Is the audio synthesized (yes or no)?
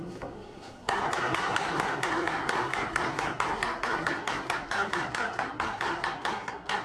yes